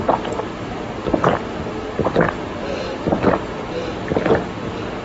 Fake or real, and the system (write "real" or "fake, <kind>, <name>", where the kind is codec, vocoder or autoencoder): real